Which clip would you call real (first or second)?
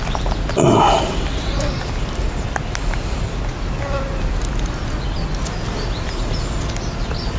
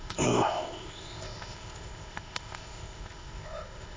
first